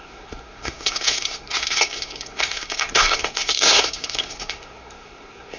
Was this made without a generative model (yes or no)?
no